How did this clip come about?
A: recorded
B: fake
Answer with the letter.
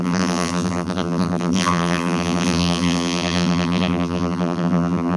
B